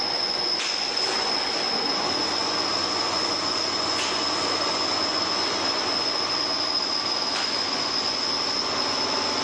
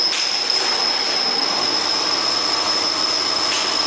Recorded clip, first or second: second